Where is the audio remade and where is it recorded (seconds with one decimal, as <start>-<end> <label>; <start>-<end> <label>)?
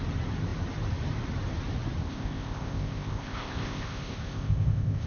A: 0.0-2.0 recorded; 2.0-5.1 remade